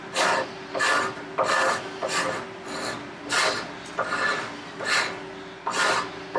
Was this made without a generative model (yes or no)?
yes